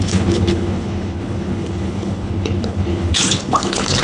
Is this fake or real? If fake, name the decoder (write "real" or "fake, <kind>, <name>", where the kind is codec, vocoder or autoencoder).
fake, codec, HILCodec